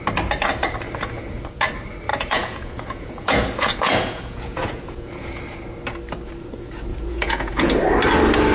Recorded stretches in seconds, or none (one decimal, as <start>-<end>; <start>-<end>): 0.0-2.1; 5.4-6.9; 7.7-8.5